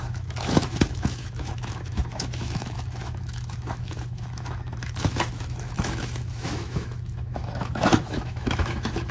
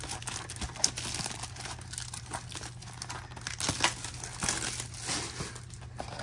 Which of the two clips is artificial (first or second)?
first